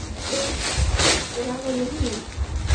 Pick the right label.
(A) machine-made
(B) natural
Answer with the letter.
B